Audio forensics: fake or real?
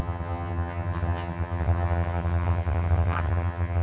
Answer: fake